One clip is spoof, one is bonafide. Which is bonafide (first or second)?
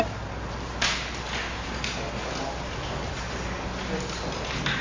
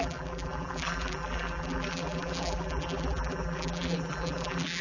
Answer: first